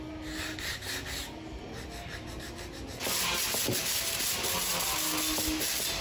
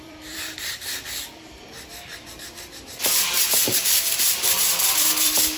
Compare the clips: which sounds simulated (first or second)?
second